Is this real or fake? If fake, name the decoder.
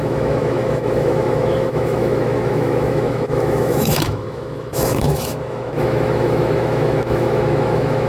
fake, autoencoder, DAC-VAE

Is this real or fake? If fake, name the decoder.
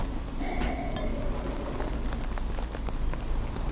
real